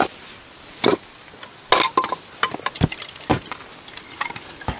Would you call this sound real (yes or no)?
yes